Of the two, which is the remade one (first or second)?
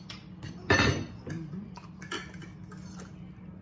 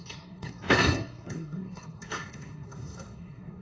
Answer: second